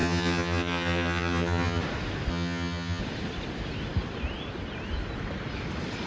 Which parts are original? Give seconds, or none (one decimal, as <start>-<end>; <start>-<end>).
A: 1.8-2.3; 3.0-6.1